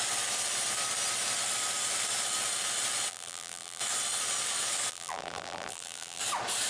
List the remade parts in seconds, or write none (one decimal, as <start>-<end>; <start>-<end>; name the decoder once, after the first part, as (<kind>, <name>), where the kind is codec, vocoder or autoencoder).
3.1-3.8 (vocoder, BigVGAN v2); 4.9-6.2